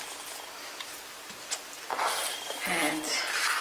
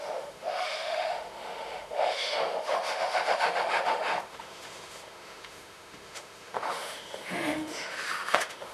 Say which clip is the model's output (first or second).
second